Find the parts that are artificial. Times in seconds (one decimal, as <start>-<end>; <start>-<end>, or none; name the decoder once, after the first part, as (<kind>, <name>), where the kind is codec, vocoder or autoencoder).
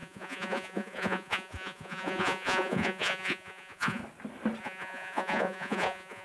0.0-4.0 (vocoder, Vocos); 4.6-6.2